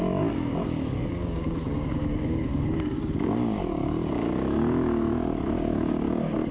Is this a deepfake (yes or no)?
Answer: yes